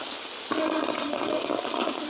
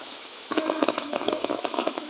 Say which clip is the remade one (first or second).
second